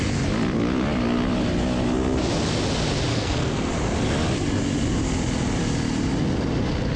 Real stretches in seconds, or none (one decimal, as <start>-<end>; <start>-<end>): 0.0-3.1; 3.7-7.0